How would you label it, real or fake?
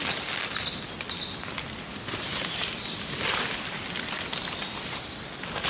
real